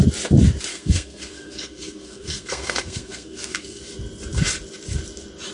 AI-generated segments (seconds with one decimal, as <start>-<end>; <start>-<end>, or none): 0.7-3.8